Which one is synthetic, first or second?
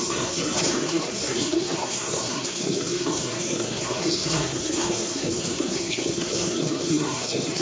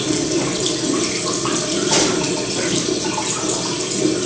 first